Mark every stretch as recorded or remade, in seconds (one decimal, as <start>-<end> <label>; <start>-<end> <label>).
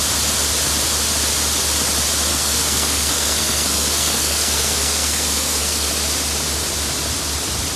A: 0.0-2.3 recorded; 2.3-5.9 remade; 5.9-7.8 recorded